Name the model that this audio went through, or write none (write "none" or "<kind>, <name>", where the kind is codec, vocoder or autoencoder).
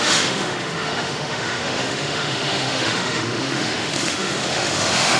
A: autoencoder, DAC-VAE